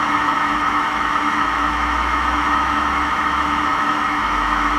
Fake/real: fake